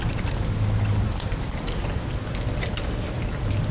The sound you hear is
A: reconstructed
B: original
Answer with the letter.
B